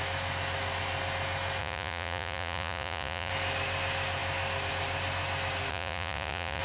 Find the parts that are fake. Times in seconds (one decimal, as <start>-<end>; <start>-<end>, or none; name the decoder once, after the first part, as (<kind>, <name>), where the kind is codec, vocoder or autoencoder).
1.6-3.3 (vocoder, Vocos); 5.7-6.6